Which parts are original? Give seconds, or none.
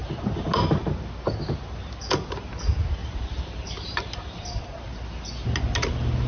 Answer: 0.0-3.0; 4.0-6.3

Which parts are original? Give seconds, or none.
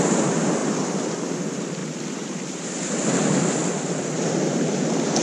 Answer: none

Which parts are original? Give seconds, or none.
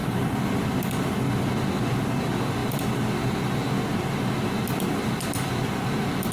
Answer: 0.0-6.3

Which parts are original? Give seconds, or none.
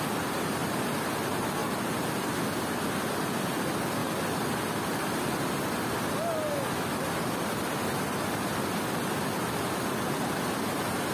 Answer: 0.0-1.6; 2.6-4.0; 5.0-11.1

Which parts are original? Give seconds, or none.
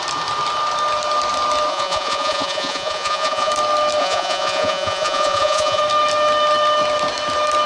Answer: 0.0-1.7; 3.5-4.0; 5.8-7.7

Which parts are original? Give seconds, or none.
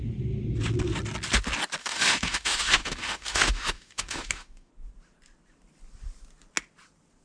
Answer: 0.0-1.8; 4.7-7.2